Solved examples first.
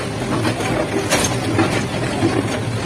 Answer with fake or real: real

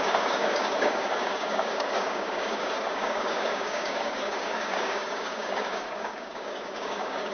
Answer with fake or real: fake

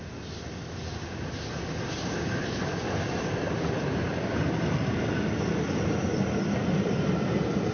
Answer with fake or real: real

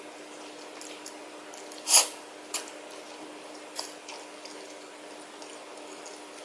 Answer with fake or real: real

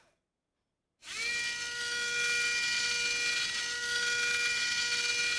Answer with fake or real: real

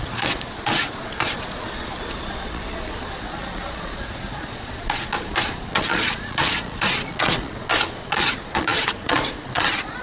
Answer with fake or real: fake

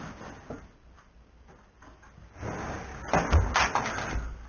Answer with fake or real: real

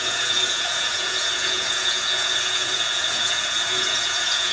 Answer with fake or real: fake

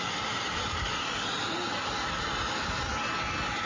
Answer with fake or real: real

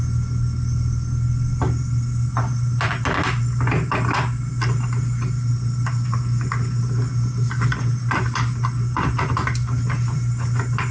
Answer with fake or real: real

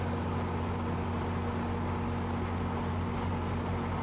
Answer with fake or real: real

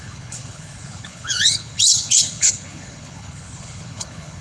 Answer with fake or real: fake